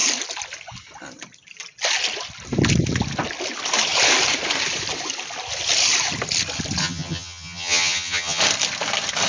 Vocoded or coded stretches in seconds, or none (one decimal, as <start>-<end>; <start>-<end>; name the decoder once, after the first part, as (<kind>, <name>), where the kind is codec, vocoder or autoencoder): 6.8-8.4 (vocoder, HiFi-GAN)